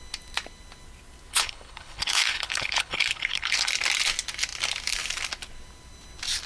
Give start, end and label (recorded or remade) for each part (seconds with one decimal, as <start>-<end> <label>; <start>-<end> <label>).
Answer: 0.0-1.3 recorded; 1.3-3.7 remade; 3.7-6.5 recorded